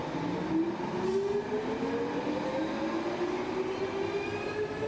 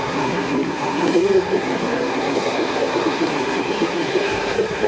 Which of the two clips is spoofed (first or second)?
second